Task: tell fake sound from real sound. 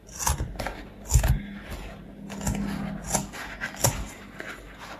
real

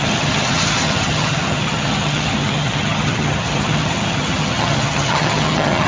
fake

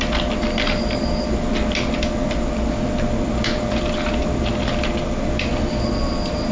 real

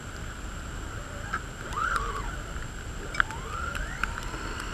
real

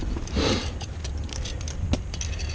real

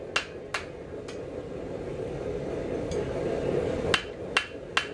real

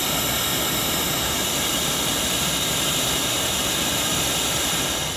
real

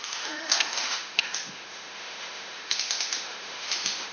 fake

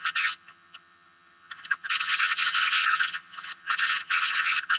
fake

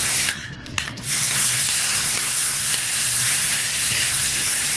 fake